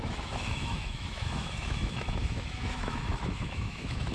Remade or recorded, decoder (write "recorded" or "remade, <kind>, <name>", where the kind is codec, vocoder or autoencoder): remade, autoencoder, DAC-VAE